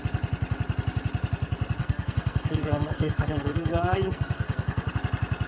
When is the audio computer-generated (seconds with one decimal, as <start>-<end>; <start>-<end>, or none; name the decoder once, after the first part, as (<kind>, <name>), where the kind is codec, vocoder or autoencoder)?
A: 1.8-4.9 (codec, SNAC)